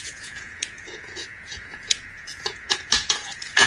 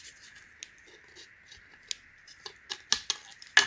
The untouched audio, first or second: second